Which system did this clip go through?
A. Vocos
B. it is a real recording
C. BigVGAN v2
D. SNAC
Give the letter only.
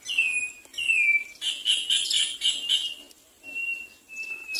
B